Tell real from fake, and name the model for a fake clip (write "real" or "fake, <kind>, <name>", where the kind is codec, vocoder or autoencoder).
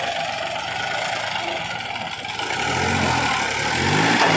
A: real